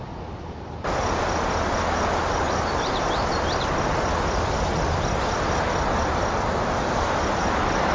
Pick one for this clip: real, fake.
real